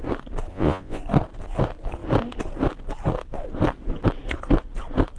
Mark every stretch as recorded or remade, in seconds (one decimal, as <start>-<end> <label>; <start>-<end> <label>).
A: 0.0-0.5 recorded; 0.5-1.0 remade; 1.0-5.2 recorded